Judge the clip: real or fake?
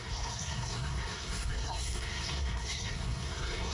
fake